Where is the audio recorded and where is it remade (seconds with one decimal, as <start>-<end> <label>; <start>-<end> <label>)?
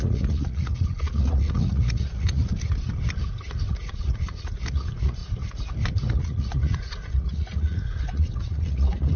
0.0-2.5 remade; 2.5-3.7 recorded; 3.7-5.2 remade; 5.2-6.2 recorded; 6.2-9.2 remade